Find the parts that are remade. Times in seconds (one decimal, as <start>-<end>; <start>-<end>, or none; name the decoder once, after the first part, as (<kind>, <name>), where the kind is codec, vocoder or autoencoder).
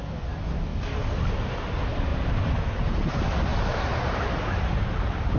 3.5-5.4 (vocoder, BigVGAN v2)